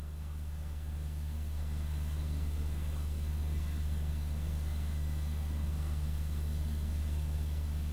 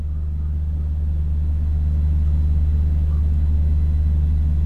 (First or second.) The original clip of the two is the second